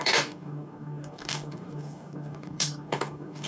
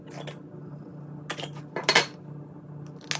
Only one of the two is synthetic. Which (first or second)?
first